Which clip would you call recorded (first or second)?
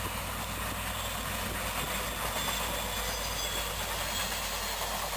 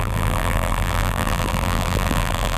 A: first